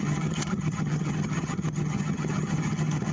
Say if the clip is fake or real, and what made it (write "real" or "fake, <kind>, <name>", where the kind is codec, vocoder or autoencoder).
fake, vocoder, HiFi-GAN